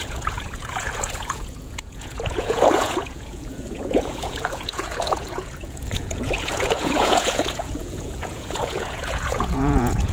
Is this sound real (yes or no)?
no